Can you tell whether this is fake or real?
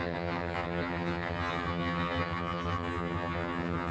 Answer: fake